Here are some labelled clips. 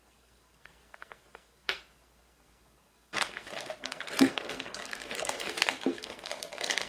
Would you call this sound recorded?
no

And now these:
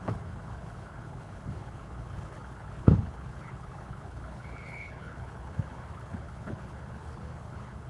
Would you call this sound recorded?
no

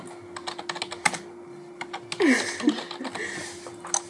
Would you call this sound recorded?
yes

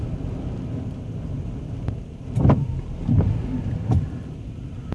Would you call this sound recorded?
yes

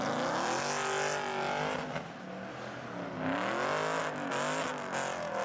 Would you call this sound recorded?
yes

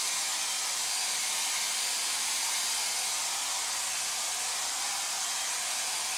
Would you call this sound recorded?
yes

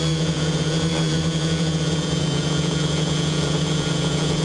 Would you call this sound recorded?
no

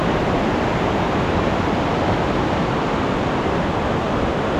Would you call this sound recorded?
yes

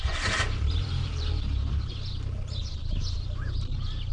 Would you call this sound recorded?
no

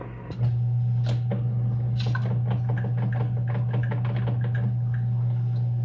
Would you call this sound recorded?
yes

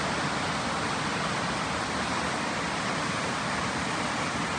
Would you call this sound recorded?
yes